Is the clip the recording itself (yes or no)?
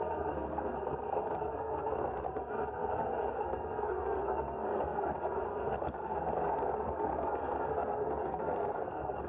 no